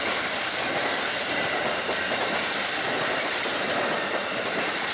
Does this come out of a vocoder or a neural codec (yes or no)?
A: no